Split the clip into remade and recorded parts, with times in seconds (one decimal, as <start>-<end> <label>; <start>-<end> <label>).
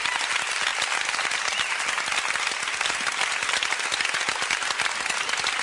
0.0-5.6 recorded